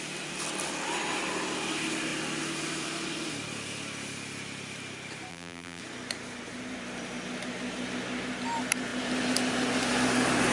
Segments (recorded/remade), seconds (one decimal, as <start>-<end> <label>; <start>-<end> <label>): 0.0-5.3 recorded; 5.3-5.8 remade; 5.8-10.5 recorded